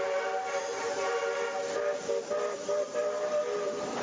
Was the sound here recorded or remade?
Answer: recorded